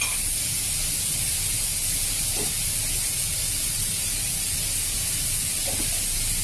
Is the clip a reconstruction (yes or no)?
no